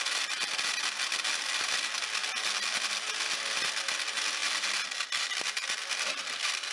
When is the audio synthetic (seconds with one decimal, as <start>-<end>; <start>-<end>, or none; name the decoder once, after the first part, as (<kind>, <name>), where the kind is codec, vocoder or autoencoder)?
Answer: none